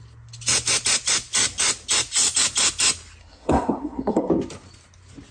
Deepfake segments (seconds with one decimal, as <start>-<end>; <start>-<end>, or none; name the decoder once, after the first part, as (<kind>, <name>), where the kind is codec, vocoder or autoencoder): 3.2-4.3 (codec, SNAC)